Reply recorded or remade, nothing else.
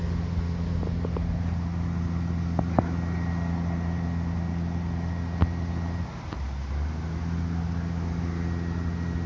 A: recorded